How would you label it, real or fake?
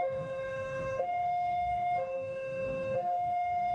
fake